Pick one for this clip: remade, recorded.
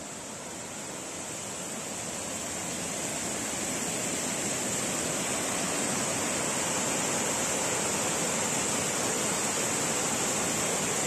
recorded